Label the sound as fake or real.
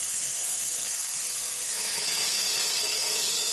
fake